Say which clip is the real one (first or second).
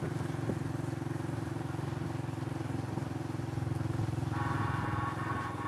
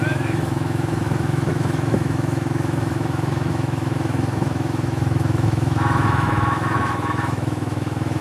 first